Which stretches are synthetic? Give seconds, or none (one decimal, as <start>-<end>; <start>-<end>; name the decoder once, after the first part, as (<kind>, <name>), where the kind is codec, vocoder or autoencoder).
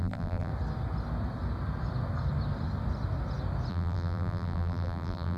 0.0-0.5 (vocoder, BigVGAN v2); 3.7-5.4